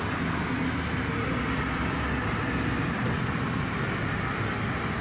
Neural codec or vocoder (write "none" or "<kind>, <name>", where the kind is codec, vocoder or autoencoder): none